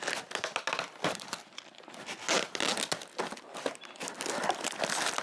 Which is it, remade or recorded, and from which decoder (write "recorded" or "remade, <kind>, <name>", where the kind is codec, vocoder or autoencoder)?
recorded